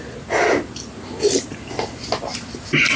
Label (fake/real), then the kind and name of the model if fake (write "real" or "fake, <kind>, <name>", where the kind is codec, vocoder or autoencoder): real